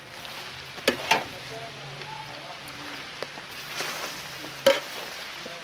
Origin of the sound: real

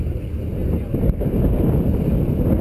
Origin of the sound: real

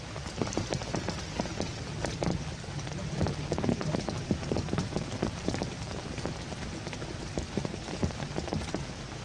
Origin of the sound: real